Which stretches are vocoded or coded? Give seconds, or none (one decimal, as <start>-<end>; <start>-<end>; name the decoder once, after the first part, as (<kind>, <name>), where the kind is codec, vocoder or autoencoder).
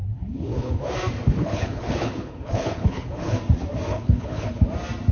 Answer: 0.0-0.8 (codec, HILCodec); 1.4-3.4; 3.9-4.6